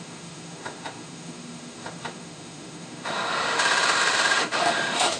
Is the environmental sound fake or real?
fake